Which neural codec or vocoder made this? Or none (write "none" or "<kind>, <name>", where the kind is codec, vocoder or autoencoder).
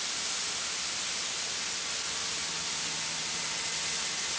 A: none